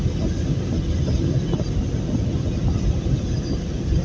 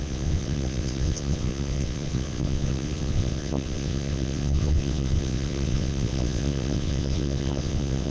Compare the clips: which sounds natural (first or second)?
first